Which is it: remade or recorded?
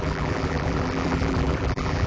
remade